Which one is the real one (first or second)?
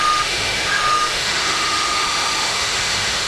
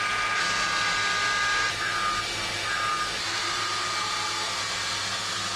second